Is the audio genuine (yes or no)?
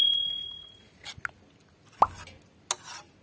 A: yes